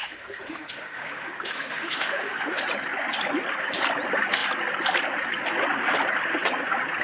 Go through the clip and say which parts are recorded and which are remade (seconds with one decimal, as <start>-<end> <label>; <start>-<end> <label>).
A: 0.0-2.6 remade; 2.6-7.0 recorded